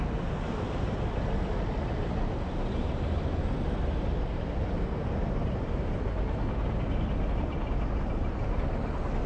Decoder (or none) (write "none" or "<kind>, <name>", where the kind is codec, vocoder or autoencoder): none